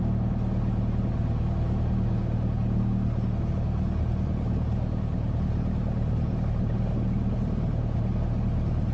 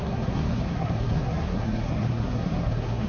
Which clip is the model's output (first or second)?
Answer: second